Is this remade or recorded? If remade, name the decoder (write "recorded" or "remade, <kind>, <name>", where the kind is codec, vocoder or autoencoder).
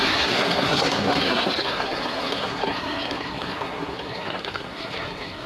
remade, codec, SNAC